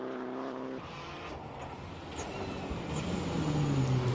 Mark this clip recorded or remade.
recorded